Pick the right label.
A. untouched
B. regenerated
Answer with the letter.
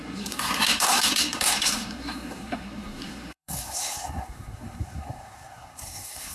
B